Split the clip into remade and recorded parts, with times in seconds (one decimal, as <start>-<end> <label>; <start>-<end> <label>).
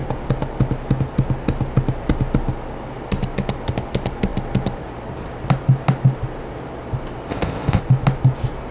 0.0-7.3 recorded; 7.3-7.8 remade; 7.8-8.7 recorded